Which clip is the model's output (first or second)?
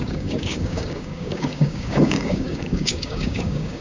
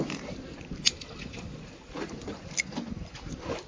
first